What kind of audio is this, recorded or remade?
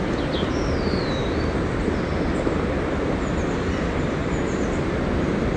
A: recorded